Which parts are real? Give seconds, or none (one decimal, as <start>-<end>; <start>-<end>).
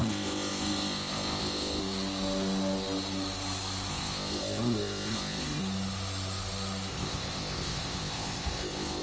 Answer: 1.8-3.9; 5.6-6.9